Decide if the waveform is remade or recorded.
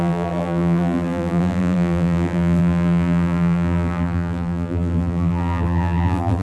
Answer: remade